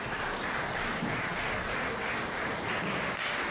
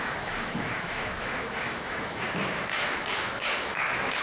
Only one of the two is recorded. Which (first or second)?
first